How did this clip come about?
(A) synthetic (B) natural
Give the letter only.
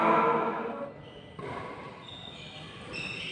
B